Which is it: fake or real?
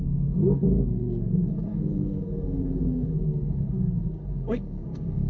fake